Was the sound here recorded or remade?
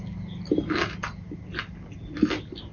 recorded